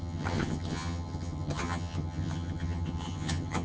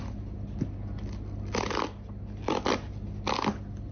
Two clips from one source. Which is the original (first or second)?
second